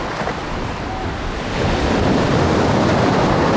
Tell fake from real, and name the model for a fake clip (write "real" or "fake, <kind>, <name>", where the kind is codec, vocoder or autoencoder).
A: real